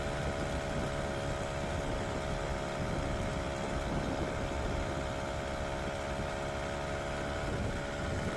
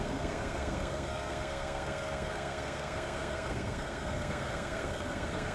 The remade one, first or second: second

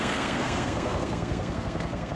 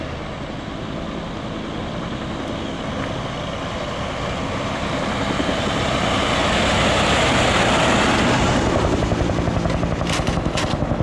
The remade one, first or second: first